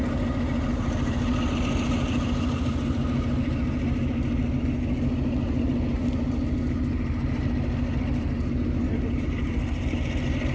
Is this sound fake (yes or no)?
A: no